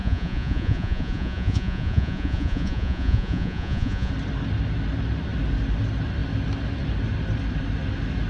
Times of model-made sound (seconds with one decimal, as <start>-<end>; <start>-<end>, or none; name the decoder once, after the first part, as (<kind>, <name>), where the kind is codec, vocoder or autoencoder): 0.0-4.1 (vocoder, Vocos)